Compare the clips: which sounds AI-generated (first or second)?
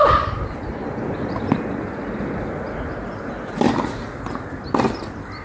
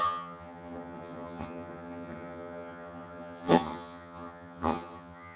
second